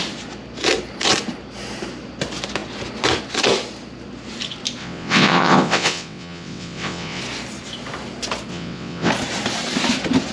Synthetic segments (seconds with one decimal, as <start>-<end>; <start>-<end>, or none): 4.8-7.2; 8.5-9.1